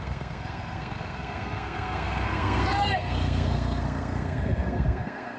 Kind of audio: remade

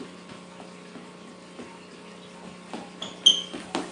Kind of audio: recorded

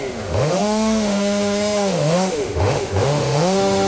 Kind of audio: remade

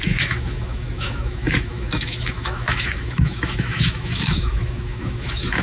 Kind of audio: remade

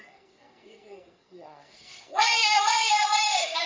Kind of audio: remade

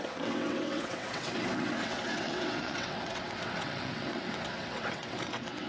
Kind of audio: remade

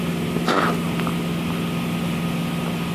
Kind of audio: recorded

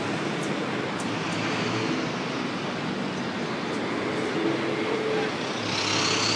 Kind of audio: recorded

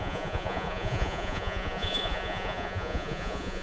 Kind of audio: remade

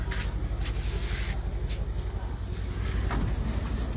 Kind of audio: recorded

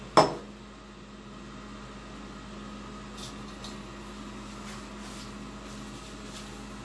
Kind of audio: recorded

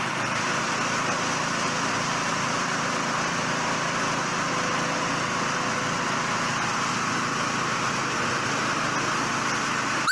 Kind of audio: recorded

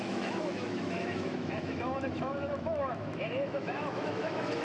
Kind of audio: remade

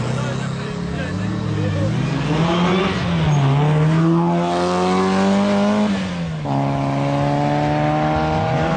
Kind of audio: recorded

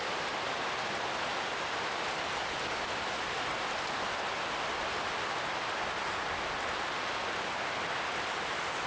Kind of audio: recorded